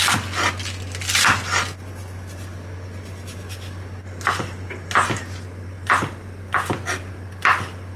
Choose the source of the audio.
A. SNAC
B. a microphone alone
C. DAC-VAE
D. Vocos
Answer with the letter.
B